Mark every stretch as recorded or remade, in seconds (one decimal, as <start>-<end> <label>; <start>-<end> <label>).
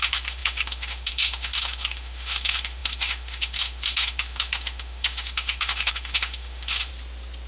0.0-6.9 remade; 6.9-7.5 recorded